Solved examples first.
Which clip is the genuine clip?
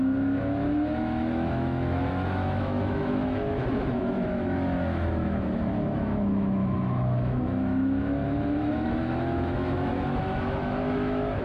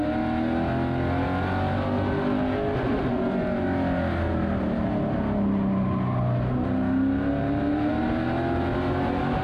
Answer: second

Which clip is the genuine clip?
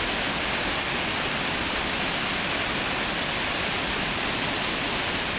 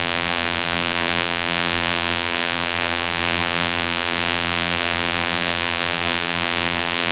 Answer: first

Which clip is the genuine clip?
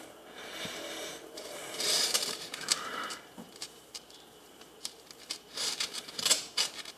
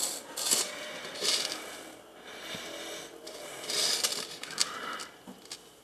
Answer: second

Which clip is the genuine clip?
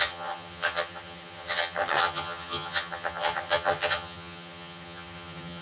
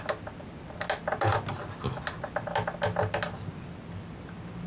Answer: second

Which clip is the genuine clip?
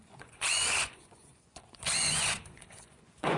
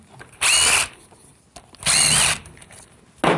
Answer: second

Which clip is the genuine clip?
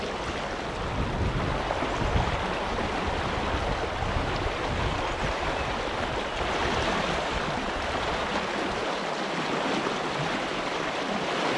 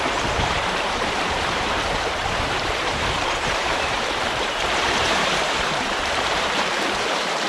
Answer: first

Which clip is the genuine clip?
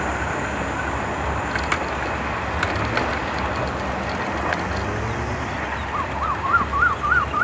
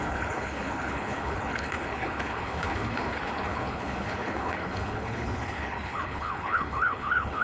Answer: first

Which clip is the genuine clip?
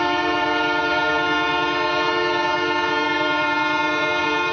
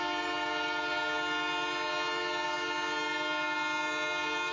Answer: second